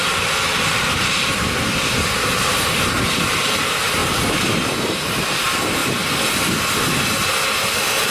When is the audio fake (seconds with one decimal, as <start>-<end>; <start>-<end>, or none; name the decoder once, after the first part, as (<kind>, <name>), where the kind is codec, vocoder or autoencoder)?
0.7-1.5 (vocoder, BigVGAN v2); 4.0-5.2